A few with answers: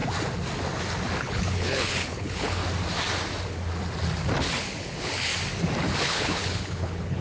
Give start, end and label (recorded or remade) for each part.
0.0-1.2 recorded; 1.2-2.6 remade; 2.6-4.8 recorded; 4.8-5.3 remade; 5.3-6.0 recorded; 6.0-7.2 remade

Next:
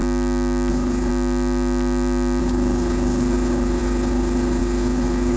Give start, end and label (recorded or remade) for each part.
0.0-0.7 recorded; 0.7-1.1 remade; 1.1-2.4 recorded; 2.4-5.4 remade